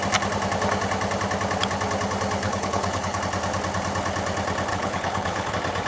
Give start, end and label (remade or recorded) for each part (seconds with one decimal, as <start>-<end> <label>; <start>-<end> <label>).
0.0-2.4 recorded; 2.4-3.2 remade; 3.2-4.7 recorded; 4.7-5.5 remade; 5.5-5.9 recorded